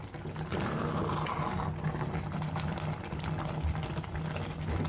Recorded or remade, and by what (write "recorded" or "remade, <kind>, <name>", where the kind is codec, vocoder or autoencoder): recorded